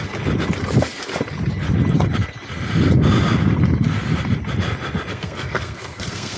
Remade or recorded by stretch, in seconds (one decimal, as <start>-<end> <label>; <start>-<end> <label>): 0.0-5.1 recorded; 5.1-6.4 remade